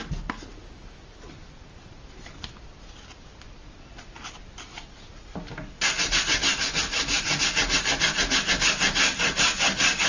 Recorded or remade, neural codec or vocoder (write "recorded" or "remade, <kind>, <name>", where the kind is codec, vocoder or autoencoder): recorded